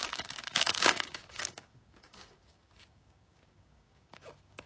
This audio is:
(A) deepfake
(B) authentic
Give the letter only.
A